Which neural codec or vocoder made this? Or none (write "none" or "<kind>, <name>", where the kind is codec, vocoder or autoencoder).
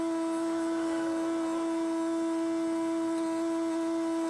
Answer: none